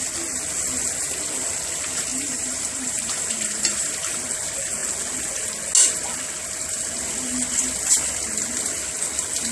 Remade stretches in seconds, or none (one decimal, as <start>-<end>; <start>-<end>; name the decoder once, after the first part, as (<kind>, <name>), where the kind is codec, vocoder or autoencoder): 2.1-3.9 (vocoder, BigVGAN v2)